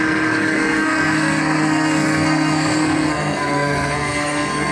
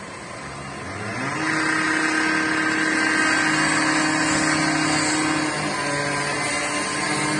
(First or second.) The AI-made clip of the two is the first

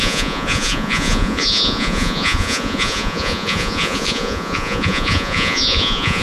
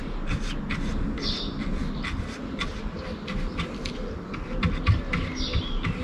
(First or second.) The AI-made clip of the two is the first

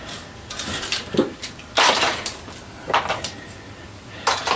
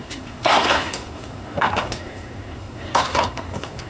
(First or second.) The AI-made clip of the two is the second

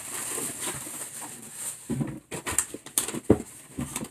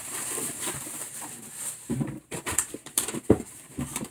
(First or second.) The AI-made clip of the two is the second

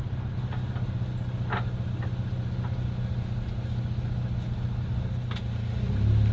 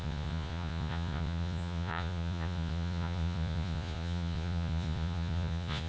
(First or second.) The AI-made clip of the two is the second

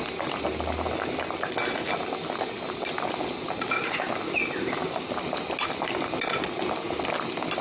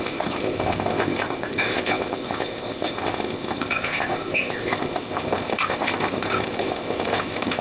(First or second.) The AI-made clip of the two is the second